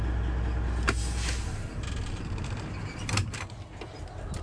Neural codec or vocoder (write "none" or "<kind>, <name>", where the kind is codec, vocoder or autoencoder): none